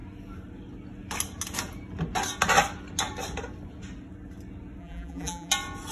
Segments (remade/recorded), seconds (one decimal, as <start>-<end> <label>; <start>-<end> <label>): 0.0-4.8 recorded; 4.8-5.5 remade; 5.5-5.9 recorded